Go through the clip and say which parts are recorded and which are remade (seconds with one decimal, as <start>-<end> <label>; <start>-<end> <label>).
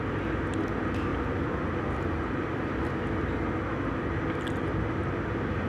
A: 0.0-1.1 recorded; 1.1-2.8 remade; 2.8-5.0 recorded; 5.0-5.7 remade